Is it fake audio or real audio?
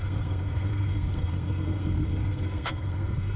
fake